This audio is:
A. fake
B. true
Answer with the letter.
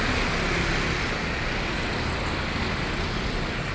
B